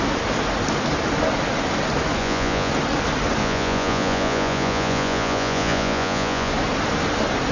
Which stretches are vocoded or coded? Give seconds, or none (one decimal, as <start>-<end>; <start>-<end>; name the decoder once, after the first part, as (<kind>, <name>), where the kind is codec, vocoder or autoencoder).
2.2-2.7 (vocoder, Vocos); 3.4-6.5